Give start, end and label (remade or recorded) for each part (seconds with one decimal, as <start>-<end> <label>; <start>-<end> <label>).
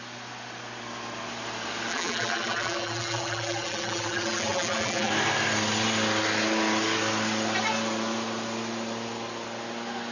0.0-1.9 recorded; 1.9-5.1 remade; 5.1-10.1 recorded